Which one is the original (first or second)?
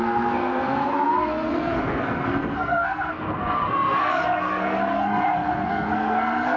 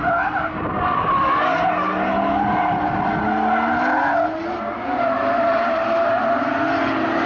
second